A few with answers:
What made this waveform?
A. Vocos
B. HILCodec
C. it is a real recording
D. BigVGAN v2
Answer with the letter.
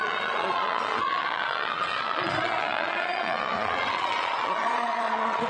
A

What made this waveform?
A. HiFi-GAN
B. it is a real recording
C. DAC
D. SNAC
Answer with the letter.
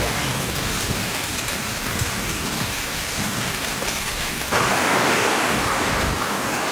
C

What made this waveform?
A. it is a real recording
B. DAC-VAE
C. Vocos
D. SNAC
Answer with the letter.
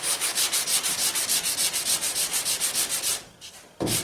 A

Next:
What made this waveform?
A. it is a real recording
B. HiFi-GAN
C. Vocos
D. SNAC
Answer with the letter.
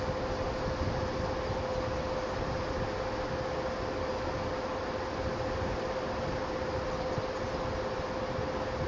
A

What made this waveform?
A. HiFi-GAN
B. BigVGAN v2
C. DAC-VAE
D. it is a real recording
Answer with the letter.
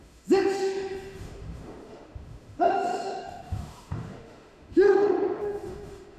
C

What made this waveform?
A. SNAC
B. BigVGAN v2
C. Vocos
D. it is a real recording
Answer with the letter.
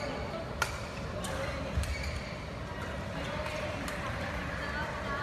D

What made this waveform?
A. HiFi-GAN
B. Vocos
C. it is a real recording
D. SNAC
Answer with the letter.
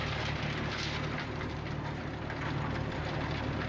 C